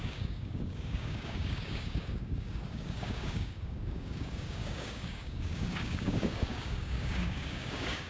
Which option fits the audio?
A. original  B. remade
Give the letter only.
B